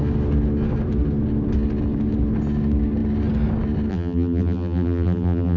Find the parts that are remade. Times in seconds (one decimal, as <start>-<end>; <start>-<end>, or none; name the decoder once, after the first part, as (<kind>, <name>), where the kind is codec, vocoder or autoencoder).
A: 3.9-5.6 (vocoder, BigVGAN v2)